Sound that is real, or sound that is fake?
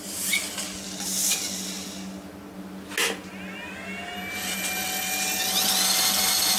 real